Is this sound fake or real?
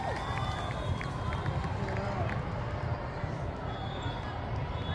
real